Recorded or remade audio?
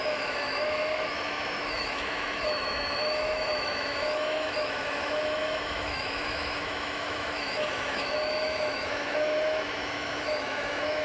remade